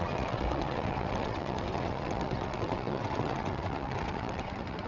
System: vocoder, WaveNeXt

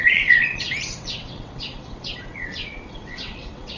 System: vocoder, WaveNeXt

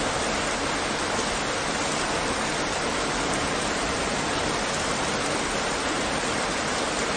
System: none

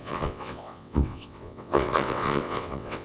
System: vocoder, WaveNeXt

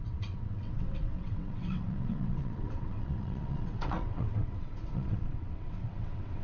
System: vocoder, WaveNeXt